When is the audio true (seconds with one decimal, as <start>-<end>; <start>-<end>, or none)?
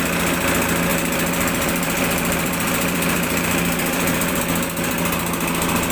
0.0-0.9; 4.4-5.9